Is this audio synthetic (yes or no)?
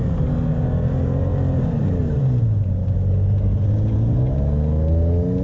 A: no